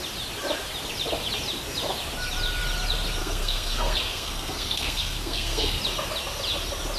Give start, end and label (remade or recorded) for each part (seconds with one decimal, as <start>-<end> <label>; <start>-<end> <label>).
0.0-3.2 recorded; 3.2-5.8 remade; 5.8-7.0 recorded